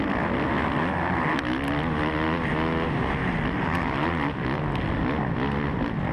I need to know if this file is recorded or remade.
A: recorded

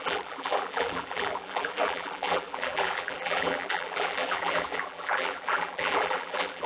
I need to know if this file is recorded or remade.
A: remade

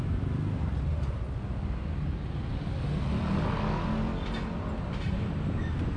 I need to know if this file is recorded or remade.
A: recorded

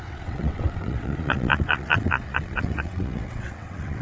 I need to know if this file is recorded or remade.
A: remade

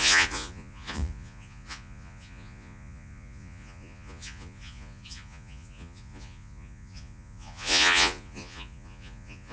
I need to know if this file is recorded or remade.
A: remade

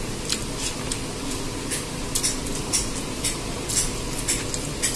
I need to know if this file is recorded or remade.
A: recorded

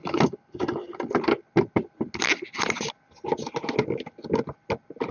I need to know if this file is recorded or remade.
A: recorded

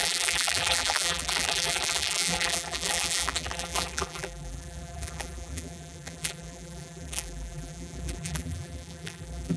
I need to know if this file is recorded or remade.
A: remade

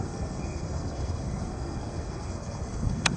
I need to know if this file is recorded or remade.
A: remade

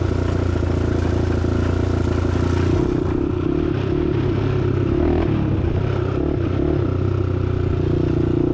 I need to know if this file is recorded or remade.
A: recorded